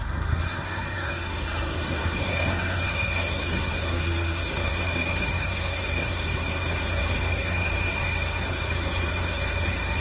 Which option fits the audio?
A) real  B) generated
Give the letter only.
B